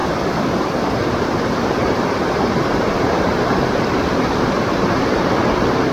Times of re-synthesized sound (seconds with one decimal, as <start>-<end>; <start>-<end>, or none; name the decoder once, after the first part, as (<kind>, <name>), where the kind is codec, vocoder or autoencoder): 0.0-5.9 (vocoder, BigVGAN v2)